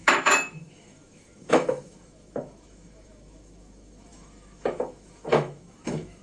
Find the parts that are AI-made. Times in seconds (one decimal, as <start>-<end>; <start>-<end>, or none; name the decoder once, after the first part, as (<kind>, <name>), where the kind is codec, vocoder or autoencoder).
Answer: 0.0-6.2 (autoencoder, DAC-VAE)